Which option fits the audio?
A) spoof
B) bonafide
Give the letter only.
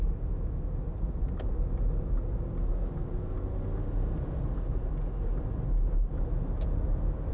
B